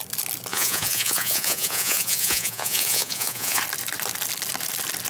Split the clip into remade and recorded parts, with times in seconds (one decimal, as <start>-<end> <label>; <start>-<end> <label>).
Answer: 0.0-0.5 recorded; 0.5-3.6 remade; 3.6-5.1 recorded